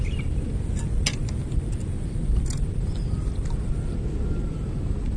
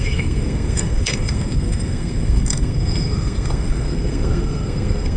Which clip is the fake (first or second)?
second